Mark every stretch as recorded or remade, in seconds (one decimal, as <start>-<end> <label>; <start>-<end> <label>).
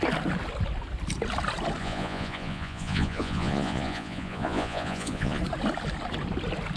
0.0-1.8 recorded; 1.8-5.4 remade; 5.4-6.8 recorded